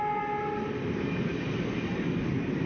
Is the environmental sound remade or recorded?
recorded